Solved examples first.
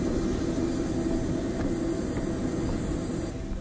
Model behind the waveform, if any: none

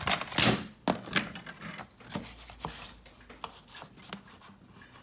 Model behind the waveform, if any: none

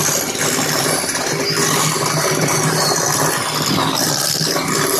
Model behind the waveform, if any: none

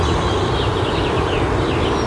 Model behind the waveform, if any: none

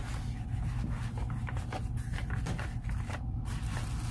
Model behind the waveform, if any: none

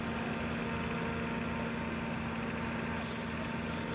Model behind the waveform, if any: none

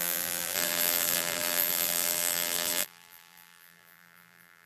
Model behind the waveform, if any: vocoder, BigVGAN v2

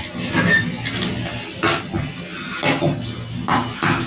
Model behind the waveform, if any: none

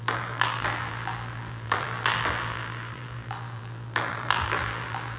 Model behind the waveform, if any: vocoder, BigVGAN v2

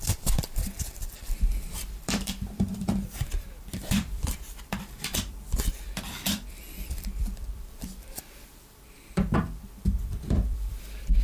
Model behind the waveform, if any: vocoder, BigVGAN v2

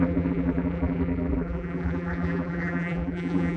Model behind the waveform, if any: vocoder, BigVGAN v2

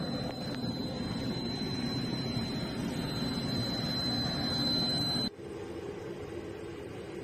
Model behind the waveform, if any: none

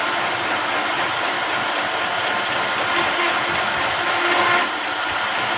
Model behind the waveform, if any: none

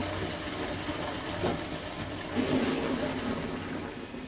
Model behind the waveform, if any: none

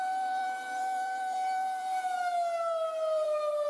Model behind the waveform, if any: vocoder, BigVGAN v2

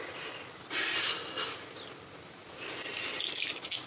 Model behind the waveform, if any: none